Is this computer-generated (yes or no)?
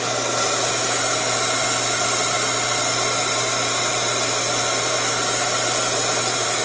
no